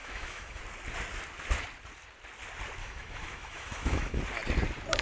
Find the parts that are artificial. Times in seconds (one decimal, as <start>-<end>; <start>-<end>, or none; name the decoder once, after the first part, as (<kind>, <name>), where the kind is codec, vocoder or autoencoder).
0.0-0.6 (autoencoder, DAC-VAE); 2.8-4.2